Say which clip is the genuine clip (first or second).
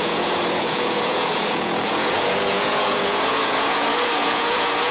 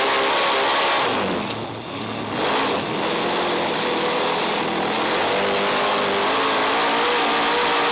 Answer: second